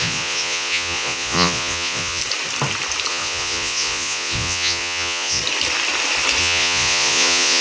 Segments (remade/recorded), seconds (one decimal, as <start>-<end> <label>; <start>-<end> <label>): 0.0-2.2 remade; 2.2-3.1 recorded; 3.1-5.4 remade; 5.4-6.4 recorded; 6.4-7.6 remade